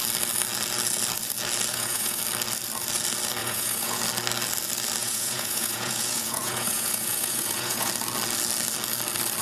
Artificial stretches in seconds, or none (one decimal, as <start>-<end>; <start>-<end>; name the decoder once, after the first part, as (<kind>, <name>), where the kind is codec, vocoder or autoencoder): 1.7-2.2 (vocoder, Vocos); 3.4-4.0; 5.0-7.9